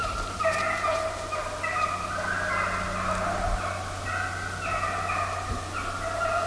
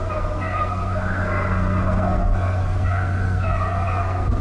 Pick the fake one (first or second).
second